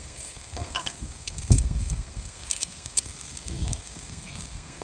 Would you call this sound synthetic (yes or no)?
yes